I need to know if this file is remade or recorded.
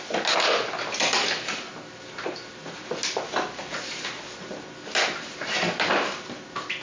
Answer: recorded